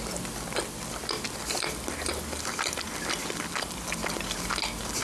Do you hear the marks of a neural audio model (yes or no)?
no